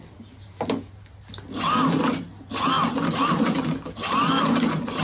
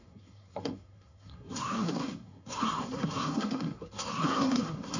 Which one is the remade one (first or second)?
second